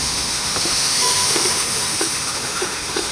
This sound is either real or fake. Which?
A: fake